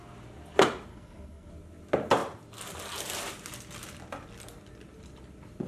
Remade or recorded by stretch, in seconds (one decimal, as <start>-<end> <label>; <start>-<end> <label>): 0.0-0.9 recorded; 0.9-1.5 remade; 1.5-5.7 recorded